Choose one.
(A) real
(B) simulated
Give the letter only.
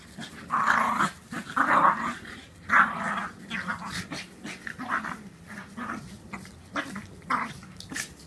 A